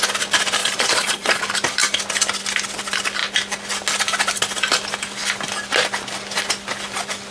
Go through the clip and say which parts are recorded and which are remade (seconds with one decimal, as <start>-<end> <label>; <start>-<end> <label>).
0.0-0.6 recorded; 0.6-1.4 remade; 1.4-7.3 recorded